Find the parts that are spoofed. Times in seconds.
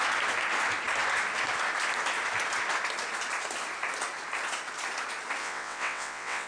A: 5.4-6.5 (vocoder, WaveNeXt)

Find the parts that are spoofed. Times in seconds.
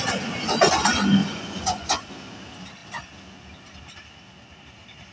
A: 1.2-2.1 (vocoder, Vocos)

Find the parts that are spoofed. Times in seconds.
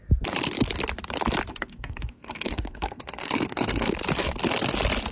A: 1.5-3.9 (codec, SNAC)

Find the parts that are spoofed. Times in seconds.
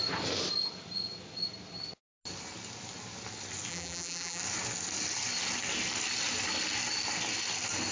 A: 3.7-4.4 (vocoder, BigVGAN v2)